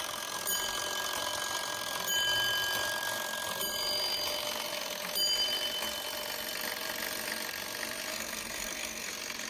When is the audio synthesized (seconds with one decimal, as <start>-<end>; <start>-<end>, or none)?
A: 8.1-9.1